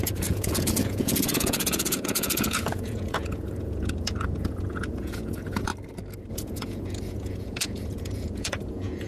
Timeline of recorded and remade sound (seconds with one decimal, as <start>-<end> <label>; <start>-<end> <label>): 0.0-5.7 remade; 5.7-6.3 recorded; 6.3-9.1 remade